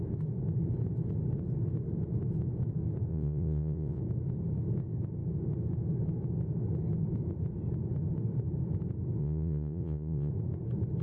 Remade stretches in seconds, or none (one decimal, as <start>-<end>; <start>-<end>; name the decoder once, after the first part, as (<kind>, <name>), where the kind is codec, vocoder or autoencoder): 3.1-4.0 (vocoder, Vocos); 9.2-10.3